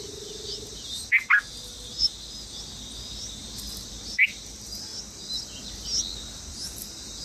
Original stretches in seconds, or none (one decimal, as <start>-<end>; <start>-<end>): 0.0-7.2